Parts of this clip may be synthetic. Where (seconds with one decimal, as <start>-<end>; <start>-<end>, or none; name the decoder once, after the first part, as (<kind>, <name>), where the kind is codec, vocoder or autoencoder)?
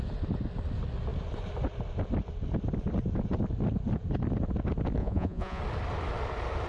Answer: 5.0-5.6 (vocoder, Vocos)